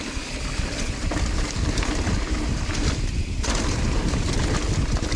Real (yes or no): yes